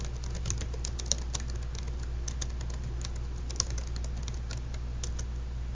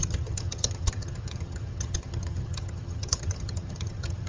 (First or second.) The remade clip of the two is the second